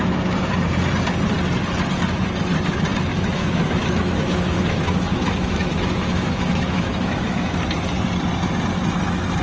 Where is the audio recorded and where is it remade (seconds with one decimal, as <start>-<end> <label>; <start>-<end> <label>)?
0.0-3.1 recorded; 3.1-7.6 remade; 7.6-9.4 recorded